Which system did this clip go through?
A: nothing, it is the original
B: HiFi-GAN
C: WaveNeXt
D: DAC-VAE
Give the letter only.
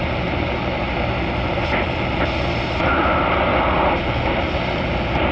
A